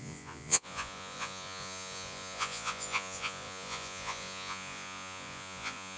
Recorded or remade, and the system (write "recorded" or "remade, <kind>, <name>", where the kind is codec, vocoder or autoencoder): remade, vocoder, Vocos